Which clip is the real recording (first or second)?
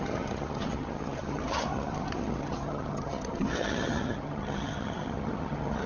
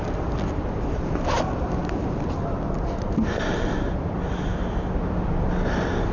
second